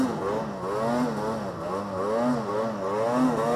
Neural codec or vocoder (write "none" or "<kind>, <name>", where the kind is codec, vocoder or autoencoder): none